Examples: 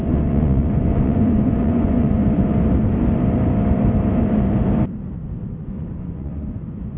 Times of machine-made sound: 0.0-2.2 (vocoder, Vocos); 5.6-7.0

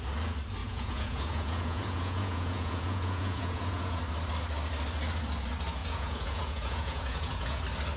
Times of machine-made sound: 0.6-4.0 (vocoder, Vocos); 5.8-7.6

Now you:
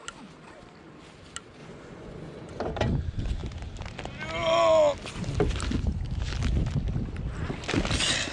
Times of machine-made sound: 1.6-2.6 (vocoder, Vocos)